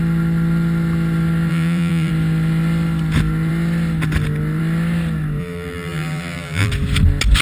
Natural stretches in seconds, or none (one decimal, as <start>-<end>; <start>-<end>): 0.0-1.5; 2.1-5.4; 6.7-7.4